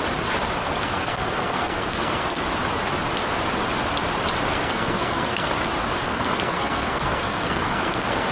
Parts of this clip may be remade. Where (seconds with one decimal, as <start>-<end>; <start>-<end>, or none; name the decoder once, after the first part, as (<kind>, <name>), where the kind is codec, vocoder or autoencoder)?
0.6-2.4 (codec, SNAC); 4.5-5.5; 6.0-8.3